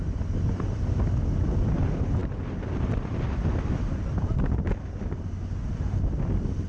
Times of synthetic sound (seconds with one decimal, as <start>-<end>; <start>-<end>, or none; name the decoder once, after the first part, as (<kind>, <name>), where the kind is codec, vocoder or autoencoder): none